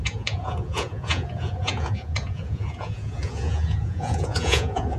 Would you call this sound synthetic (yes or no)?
yes